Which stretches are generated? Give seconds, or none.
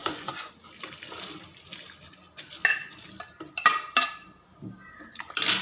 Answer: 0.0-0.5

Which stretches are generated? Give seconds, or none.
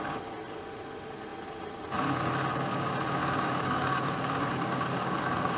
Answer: 3.2-5.6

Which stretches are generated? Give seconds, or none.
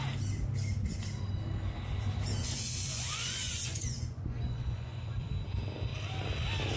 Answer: 2.4-5.3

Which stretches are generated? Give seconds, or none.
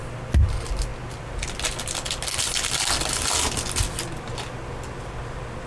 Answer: none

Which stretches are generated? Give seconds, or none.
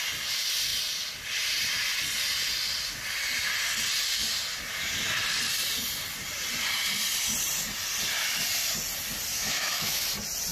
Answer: 9.3-10.0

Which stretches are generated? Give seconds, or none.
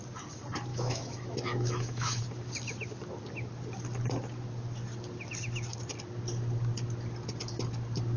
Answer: 0.7-2.2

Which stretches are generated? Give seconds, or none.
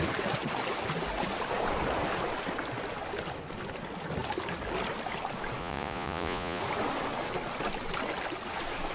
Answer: 5.6-6.6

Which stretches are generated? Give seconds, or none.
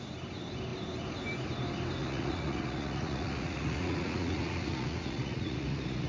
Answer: 2.0-6.1